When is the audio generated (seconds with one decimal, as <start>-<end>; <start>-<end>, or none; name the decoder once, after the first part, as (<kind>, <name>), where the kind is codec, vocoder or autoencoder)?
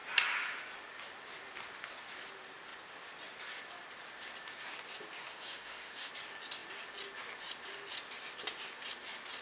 5.3-6.1 (autoencoder, DAC-VAE)